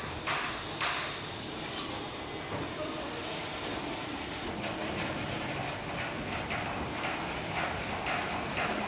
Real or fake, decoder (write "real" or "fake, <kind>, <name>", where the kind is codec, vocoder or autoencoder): real